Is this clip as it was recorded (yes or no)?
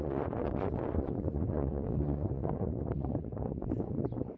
no